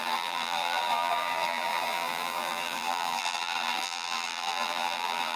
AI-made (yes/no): yes